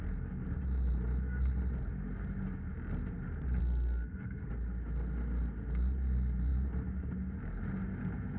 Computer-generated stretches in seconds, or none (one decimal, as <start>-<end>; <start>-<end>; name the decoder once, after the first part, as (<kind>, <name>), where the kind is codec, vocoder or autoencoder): 3.6-4.5 (codec, SNAC)